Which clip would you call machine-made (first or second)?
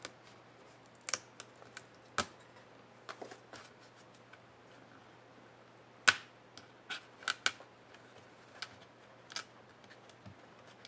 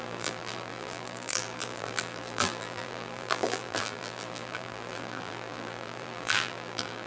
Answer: second